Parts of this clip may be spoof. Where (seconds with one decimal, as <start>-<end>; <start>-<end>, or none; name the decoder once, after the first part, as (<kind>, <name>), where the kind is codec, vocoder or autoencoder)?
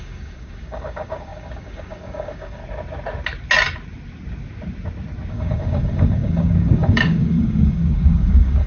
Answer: 0.0-2.6 (codec, DAC); 5.3-8.7